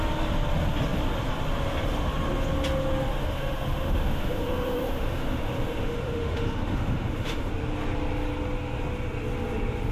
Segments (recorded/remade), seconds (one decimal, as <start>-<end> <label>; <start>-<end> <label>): 0.0-3.1 recorded; 3.1-7.5 remade; 7.5-9.9 recorded